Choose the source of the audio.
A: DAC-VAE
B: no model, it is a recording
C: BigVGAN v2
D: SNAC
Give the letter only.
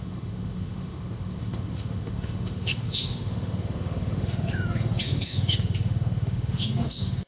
A